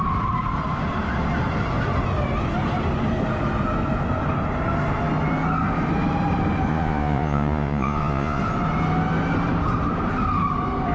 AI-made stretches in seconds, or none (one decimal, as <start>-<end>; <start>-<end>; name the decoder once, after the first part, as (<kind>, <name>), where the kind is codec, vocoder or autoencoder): 6.7-8.4 (vocoder, Vocos)